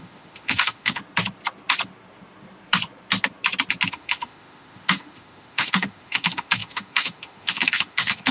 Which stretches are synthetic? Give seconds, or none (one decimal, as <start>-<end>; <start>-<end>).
0.0-1.0; 3.9-8.3